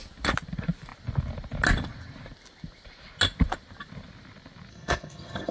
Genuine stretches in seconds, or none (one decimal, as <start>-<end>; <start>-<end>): 0.0-4.7